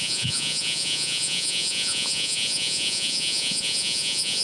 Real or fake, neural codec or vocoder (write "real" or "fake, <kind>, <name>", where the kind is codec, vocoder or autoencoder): fake, vocoder, Vocos